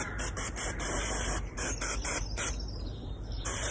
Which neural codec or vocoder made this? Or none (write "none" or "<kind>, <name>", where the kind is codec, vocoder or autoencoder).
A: vocoder, BigVGAN v2